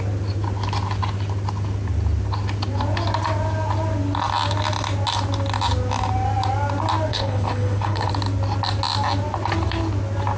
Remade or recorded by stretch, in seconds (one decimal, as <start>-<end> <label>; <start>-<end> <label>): 0.0-7.1 recorded; 7.1-8.1 remade; 8.1-10.4 recorded